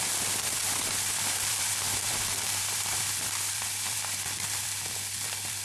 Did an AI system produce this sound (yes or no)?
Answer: yes